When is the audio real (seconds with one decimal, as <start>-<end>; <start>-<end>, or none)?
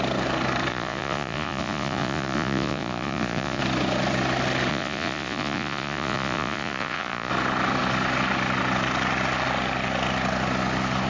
0.0-0.7; 3.6-4.7; 7.3-11.1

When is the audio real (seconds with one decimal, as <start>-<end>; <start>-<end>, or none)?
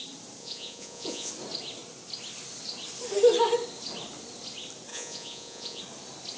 0.0-0.4; 1.3-4.9; 5.8-6.4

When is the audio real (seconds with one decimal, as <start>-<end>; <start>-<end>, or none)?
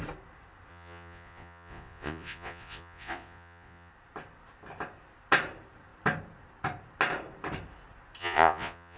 0.0-0.7; 3.9-8.2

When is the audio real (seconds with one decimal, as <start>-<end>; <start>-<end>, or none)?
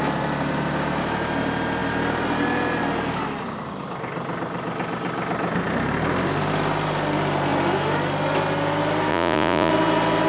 0.0-9.1; 9.7-10.3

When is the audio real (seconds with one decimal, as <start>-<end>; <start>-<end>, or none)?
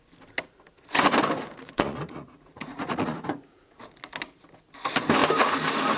0.0-1.5; 3.8-6.0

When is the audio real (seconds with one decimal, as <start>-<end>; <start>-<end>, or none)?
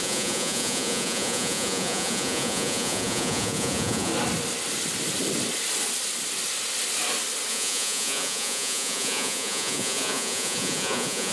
4.1-7.5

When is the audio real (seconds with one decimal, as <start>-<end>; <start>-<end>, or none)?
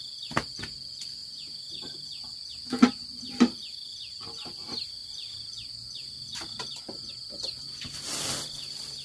0.0-1.2; 1.7-9.0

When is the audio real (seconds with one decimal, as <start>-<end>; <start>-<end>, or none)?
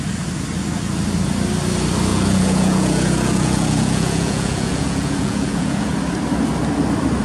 0.0-2.1; 5.9-7.2